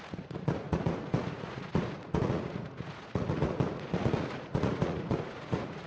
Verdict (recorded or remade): remade